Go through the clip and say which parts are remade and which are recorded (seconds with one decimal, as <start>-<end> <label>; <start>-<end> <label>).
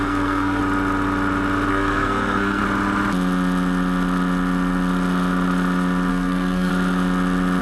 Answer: 0.0-0.6 remade; 0.6-1.7 recorded; 1.7-2.6 remade; 2.6-6.1 recorded; 6.1-6.7 remade; 6.7-7.6 recorded